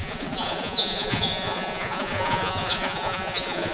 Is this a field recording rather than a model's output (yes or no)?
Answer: no